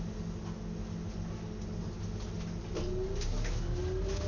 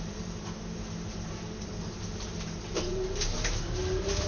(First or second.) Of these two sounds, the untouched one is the first